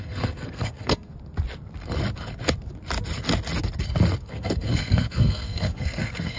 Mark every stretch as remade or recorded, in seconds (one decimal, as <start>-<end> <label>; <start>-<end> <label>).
0.0-1.1 remade; 1.1-4.2 recorded; 4.2-6.4 remade